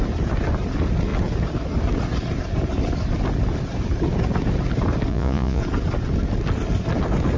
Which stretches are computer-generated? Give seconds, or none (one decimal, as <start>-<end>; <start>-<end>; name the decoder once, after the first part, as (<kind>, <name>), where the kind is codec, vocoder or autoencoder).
5.1-5.6 (vocoder, Vocos)